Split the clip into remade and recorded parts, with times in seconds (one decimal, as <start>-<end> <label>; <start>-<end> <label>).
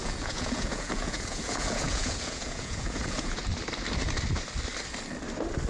0.0-3.4 remade; 3.4-5.7 recorded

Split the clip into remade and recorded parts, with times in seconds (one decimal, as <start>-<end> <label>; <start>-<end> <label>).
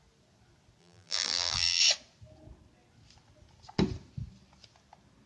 0.0-0.8 recorded; 0.8-1.8 remade; 1.8-5.3 recorded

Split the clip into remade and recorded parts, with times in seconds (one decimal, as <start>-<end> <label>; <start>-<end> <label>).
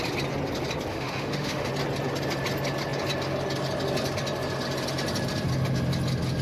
0.0-0.9 recorded; 0.9-1.7 remade; 1.7-6.4 recorded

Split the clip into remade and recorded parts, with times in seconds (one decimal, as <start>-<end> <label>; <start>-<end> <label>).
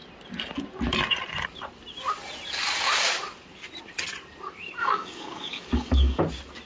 0.0-4.8 recorded; 4.8-6.2 remade; 6.2-6.7 recorded